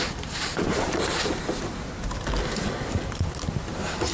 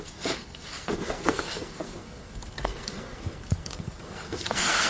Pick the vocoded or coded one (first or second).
second